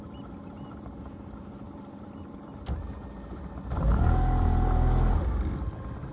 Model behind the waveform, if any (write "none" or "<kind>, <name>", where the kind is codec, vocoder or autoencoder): none